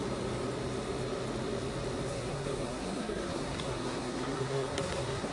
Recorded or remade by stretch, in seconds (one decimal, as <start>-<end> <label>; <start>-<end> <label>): 0.0-2.1 recorded; 2.1-5.3 remade